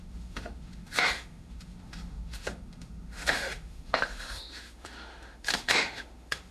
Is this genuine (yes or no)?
no